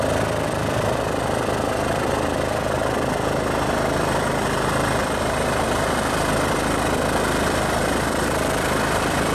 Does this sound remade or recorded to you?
remade